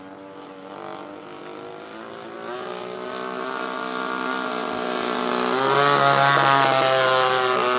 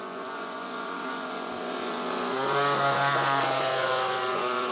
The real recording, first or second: first